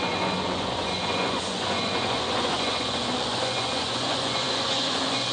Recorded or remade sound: remade